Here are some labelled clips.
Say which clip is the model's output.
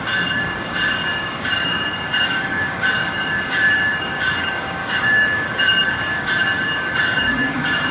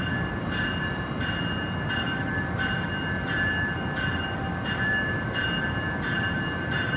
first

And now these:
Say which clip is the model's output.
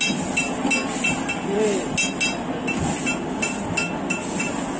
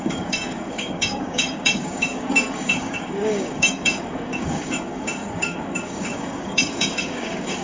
second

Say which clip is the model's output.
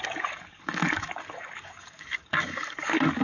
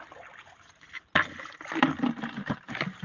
first